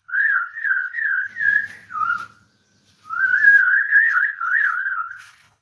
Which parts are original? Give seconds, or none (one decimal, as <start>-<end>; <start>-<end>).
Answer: 1.3-3.6